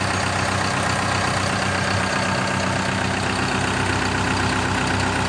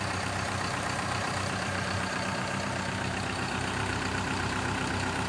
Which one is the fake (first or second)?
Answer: second